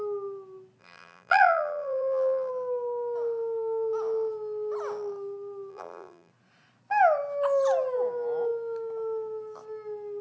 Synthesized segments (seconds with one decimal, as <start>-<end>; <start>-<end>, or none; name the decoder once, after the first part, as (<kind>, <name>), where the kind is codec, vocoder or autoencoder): 0.8-2.5 (vocoder, BigVGAN v2); 5.7-6.3